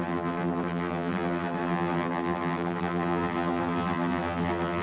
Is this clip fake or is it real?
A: fake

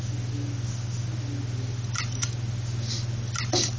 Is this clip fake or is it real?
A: real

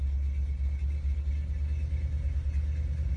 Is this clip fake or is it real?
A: real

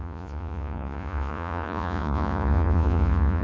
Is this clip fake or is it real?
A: fake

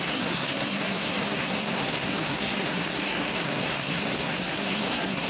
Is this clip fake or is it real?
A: fake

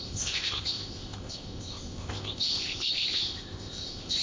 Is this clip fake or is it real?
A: fake